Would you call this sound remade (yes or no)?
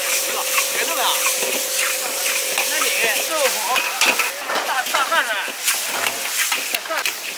no